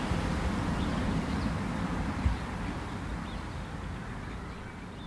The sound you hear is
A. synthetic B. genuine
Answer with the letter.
B